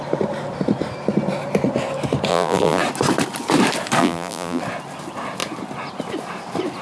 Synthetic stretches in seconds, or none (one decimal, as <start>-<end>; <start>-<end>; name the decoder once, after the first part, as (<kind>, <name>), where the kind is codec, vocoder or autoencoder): 2.3-2.8 (vocoder, BigVGAN v2); 4.0-4.6